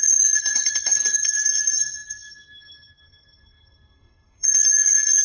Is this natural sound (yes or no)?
no